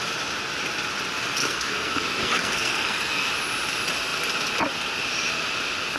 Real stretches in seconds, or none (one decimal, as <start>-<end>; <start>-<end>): 0.0-1.4; 3.3-6.0